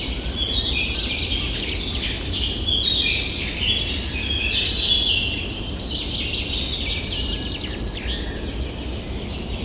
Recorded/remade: recorded